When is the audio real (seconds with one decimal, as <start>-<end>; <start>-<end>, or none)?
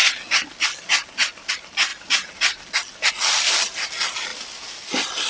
0.0-1.9; 3.1-4.3